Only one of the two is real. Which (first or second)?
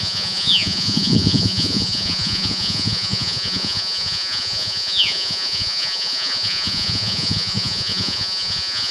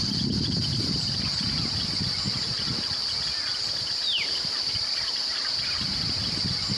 second